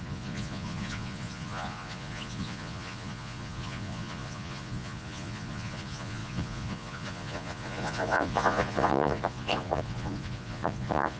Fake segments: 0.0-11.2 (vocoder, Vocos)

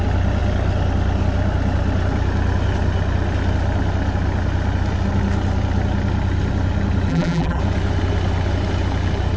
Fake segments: 7.1-7.6 (vocoder, BigVGAN v2)

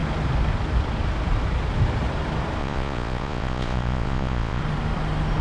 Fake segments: 2.6-4.6 (vocoder, Vocos)

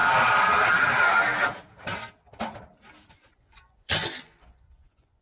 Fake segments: 3.1-5.2 (vocoder, Vocos)